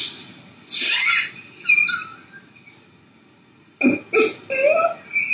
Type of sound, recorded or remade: recorded